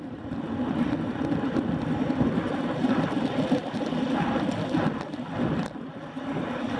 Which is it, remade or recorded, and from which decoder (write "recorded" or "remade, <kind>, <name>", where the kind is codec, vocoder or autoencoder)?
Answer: recorded